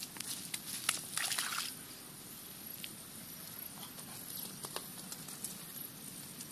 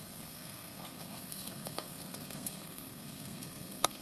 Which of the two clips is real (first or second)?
first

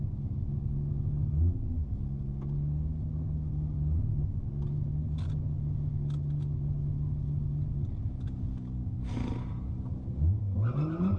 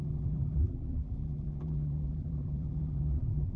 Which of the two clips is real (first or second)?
first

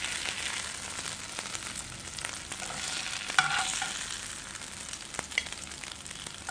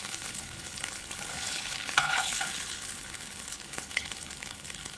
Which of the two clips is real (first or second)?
first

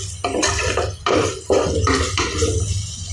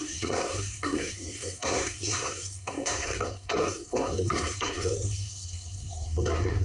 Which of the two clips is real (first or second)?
first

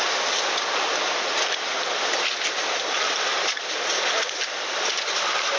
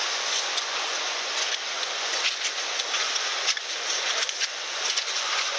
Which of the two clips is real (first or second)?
first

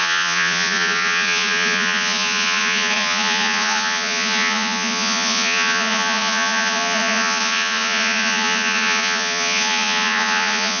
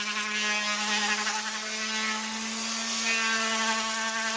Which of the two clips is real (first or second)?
second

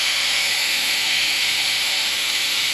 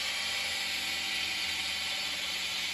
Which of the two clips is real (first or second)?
second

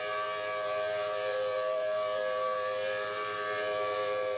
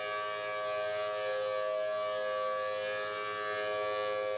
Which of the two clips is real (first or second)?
second